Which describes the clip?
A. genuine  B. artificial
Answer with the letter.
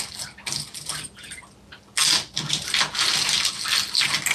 A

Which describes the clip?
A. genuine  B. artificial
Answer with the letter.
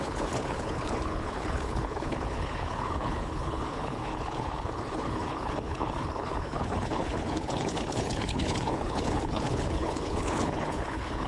B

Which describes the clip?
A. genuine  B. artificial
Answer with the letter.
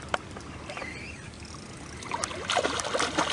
A